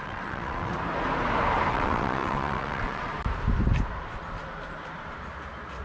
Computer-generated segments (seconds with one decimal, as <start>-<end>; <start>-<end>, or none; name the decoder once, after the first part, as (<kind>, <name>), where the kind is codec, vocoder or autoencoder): 0.0-0.7 (vocoder, WaveNeXt); 1.7-3.1